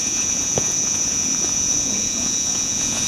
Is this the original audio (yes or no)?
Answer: no